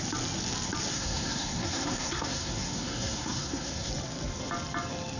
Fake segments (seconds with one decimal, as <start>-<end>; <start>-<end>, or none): 0.9-3.9